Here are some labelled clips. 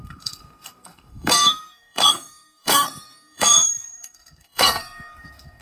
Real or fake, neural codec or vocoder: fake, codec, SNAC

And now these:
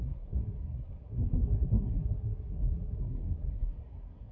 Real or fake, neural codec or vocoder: fake, codec, SNAC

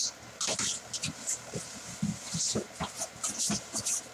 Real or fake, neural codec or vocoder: real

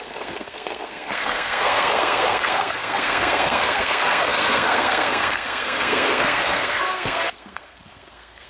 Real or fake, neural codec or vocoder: fake, codec, SNAC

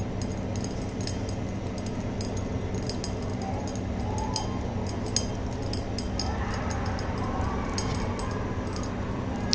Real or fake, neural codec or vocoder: real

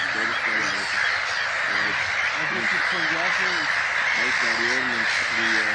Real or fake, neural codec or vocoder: real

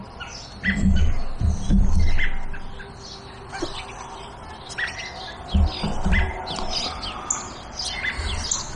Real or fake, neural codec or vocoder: real